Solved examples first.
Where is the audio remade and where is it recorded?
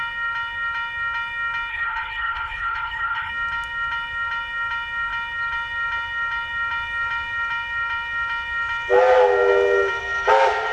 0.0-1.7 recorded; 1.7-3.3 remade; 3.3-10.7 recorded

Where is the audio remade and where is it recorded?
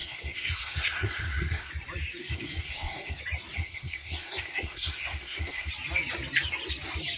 0.0-1.7 remade; 1.7-2.2 recorded; 2.2-3.2 remade; 3.2-3.6 recorded; 3.6-5.7 remade; 5.7-7.2 recorded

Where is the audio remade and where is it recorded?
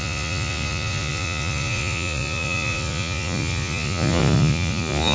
0.0-5.1 remade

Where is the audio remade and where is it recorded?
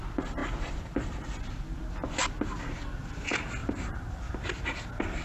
0.0-0.4 recorded; 0.4-1.8 remade; 1.8-3.6 recorded; 3.6-4.3 remade; 4.3-5.2 recorded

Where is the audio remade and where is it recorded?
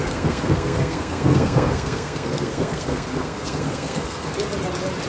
0.0-4.3 remade; 4.3-5.1 recorded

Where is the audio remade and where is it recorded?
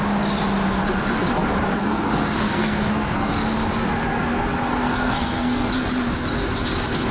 0.0-1.8 recorded; 1.8-3.3 remade; 3.3-4.7 recorded; 4.7-5.7 remade; 5.7-7.1 recorded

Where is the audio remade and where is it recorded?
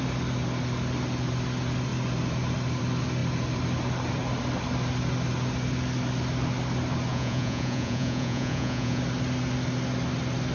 0.0-7.1 recorded; 7.1-9.0 remade; 9.0-10.5 recorded